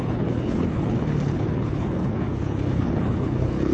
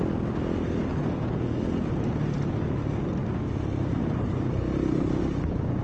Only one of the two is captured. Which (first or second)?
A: second